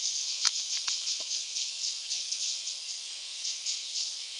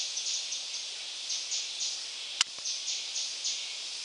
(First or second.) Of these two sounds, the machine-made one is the first